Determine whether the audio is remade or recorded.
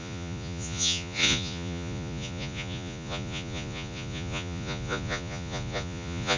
remade